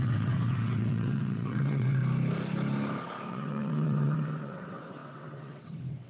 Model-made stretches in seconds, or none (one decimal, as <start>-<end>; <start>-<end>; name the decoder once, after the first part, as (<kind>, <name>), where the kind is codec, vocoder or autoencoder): 0.0-2.0 (vocoder, WaveNeXt); 3.3-6.1